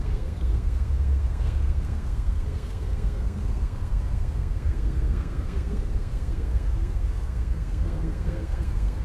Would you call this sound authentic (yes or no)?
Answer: no